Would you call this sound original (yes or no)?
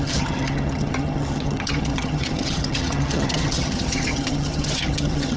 no